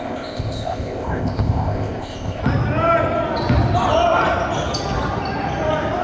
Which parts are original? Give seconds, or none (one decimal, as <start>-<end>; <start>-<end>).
2.4-6.0